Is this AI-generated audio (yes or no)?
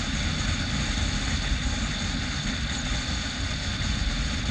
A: no